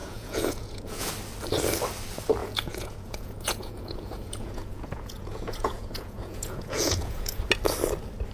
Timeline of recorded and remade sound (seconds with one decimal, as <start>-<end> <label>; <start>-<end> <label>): 0.0-1.1 remade; 1.1-2.4 recorded; 2.4-7.4 remade; 7.4-8.3 recorded